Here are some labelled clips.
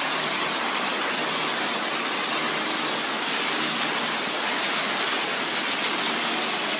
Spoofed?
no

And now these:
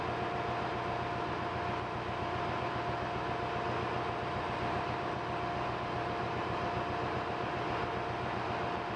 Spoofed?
no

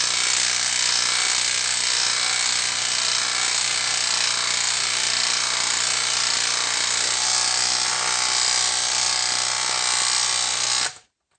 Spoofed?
no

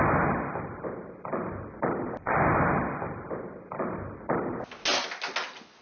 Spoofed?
no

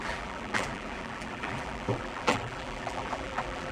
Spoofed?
yes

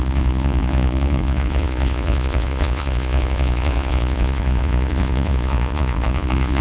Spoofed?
yes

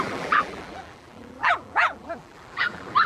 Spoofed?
yes